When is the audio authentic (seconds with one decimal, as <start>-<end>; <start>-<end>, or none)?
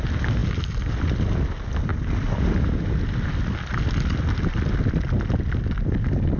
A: 0.0-6.4